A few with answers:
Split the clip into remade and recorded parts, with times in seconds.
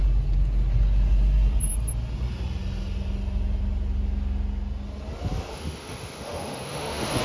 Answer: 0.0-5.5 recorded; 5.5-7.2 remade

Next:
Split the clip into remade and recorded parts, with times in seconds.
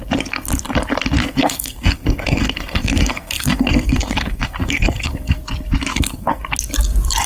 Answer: 0.0-1.2 recorded; 1.2-5.4 remade; 5.4-5.9 recorded; 5.9-6.4 remade; 6.4-7.3 recorded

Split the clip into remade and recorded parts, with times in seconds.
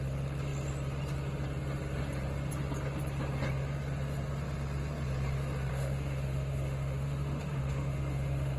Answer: 0.0-5.7 recorded; 5.7-8.6 remade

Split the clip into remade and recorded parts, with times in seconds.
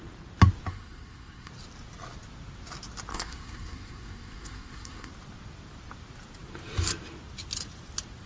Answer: 0.0-0.7 recorded; 0.7-1.5 remade; 1.5-3.1 recorded; 3.1-5.1 remade; 5.1-8.3 recorded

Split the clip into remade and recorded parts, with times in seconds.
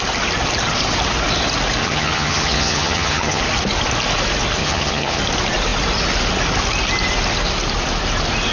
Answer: 0.0-1.8 recorded; 1.8-3.4 remade; 3.4-4.6 recorded; 4.6-5.2 remade; 5.2-8.5 recorded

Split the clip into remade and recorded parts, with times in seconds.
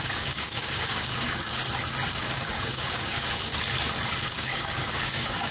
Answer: 0.0-1.6 remade; 1.6-2.1 recorded; 2.1-3.5 remade; 3.5-4.2 recorded; 4.2-5.5 remade